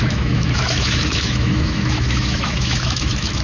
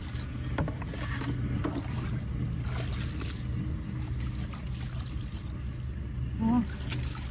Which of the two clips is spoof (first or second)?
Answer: first